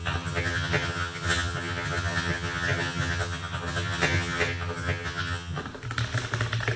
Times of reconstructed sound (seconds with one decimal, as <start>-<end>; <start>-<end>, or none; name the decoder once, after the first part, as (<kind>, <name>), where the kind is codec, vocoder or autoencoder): 0.0-5.6 (vocoder, HiFi-GAN)